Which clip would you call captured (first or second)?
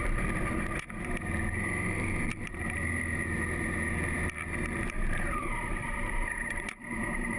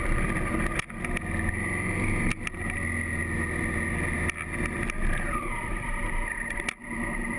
second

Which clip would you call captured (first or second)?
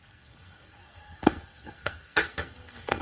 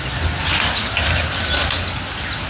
second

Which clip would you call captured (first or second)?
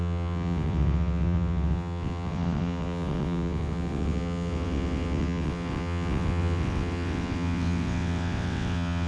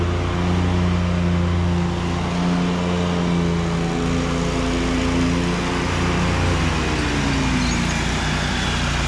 second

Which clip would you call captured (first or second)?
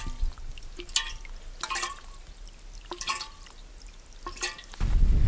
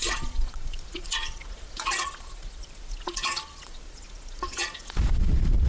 first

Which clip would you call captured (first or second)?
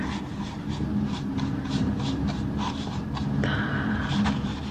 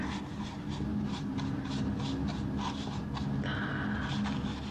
second